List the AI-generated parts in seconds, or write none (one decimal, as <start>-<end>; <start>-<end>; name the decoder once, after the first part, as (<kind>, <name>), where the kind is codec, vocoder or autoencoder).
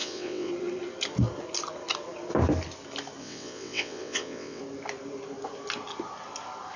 0.0-0.5 (vocoder, WaveNeXt); 3.2-4.6